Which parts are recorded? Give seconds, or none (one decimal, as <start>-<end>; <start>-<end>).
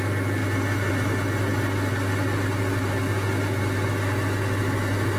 0.0-5.2